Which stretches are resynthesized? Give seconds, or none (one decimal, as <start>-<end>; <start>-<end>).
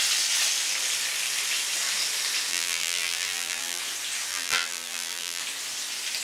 2.5-3.8; 4.3-5.4